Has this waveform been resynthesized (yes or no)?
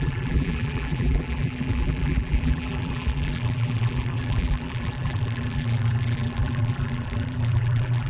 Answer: yes